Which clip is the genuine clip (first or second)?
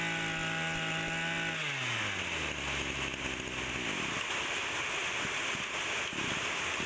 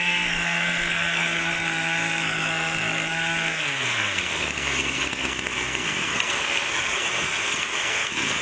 first